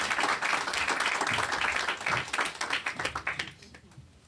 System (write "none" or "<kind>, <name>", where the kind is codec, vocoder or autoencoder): none